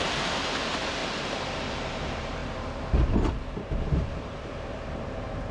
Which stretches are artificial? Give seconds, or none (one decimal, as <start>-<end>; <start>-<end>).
0.0-1.0; 1.7-2.4; 4.2-5.5